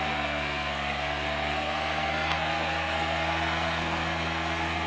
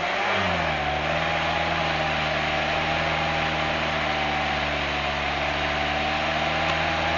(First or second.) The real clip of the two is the second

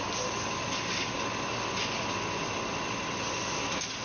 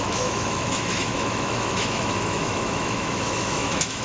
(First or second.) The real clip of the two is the first